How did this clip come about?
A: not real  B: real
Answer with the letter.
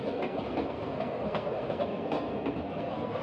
A